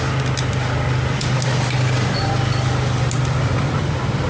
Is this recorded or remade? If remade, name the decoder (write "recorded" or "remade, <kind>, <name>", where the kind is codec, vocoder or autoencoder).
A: recorded